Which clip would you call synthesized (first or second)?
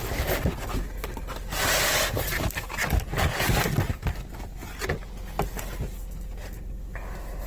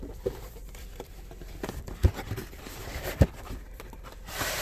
second